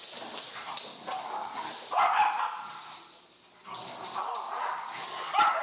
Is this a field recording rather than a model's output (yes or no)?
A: yes